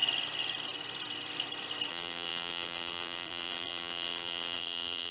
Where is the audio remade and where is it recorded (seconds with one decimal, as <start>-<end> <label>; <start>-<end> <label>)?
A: 0.0-1.9 recorded; 1.9-5.1 remade

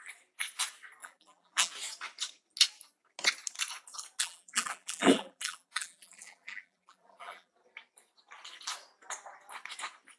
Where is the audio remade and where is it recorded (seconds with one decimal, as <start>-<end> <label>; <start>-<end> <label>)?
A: 0.0-1.0 recorded; 1.0-1.7 remade; 1.7-4.2 recorded; 4.2-7.5 remade; 7.5-10.2 recorded